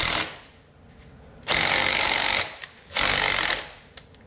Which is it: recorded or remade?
recorded